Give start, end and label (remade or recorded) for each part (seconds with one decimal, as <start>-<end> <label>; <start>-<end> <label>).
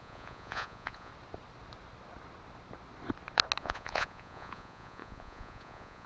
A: 0.0-1.1 remade; 1.1-3.6 recorded; 3.6-6.1 remade